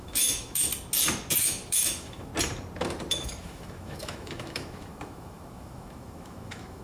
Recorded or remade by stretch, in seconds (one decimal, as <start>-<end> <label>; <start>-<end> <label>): 0.0-0.7 remade; 0.7-1.3 recorded; 1.3-2.3 remade; 2.3-3.1 recorded; 3.1-6.8 remade